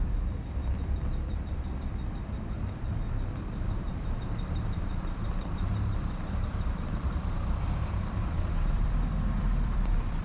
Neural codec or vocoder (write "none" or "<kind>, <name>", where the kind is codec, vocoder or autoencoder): vocoder, BigVGAN v2